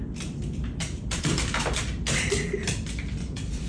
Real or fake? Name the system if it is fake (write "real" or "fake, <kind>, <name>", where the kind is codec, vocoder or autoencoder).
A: real